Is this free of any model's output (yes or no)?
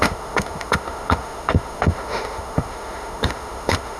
no